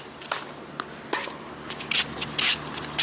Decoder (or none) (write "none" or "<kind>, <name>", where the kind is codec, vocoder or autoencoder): none